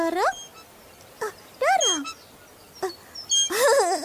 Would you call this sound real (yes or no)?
yes